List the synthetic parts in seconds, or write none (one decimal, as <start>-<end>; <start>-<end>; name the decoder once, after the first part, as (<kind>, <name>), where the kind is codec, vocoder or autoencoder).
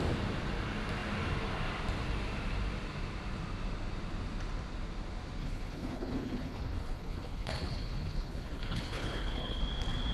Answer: 5.4-9.6 (codec, HILCodec)